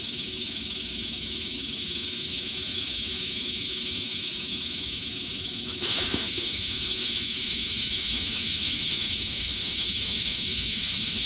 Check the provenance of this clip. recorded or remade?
remade